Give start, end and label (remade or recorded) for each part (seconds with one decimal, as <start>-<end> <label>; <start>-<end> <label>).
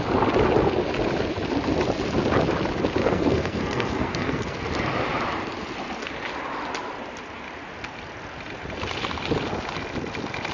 0.0-3.0 recorded; 3.0-4.6 remade; 4.6-10.5 recorded